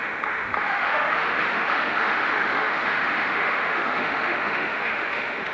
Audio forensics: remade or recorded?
remade